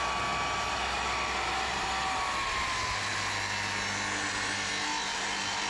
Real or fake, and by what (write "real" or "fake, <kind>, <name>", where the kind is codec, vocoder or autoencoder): real